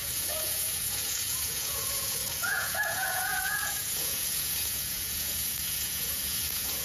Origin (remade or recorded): remade